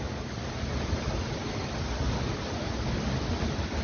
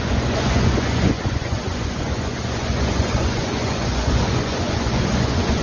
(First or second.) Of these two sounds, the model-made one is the second